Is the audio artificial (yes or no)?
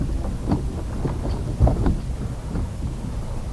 no